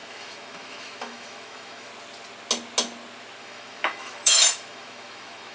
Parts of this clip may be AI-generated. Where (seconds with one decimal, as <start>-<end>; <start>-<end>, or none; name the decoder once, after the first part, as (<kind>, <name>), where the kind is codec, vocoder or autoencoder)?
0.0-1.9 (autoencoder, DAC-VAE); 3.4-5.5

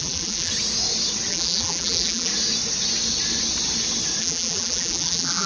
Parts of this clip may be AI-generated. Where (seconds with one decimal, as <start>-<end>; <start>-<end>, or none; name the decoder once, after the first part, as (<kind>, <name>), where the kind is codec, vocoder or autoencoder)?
0.0-0.5 (vocoder, BigVGAN v2); 1.3-2.3; 4.2-5.5

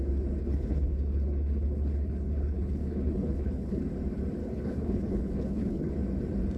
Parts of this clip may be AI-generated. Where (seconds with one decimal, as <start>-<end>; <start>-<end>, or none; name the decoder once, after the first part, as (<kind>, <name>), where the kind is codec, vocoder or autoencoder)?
0.4-3.8 (codec, HILCodec); 4.4-5.9